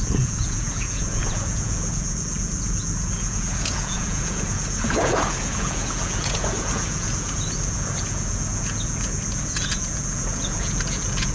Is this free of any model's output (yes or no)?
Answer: no